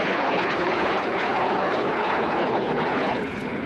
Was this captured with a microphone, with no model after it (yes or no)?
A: no